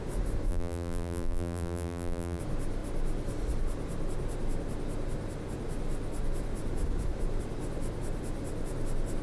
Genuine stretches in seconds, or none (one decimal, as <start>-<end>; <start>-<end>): 0.0-0.5; 2.4-9.2